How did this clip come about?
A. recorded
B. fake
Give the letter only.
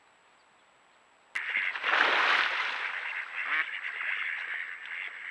A